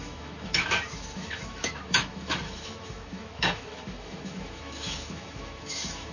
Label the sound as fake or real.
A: fake